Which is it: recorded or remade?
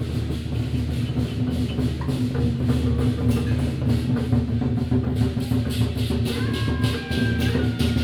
recorded